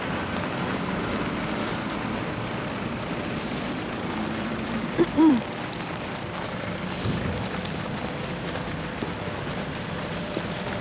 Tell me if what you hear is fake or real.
fake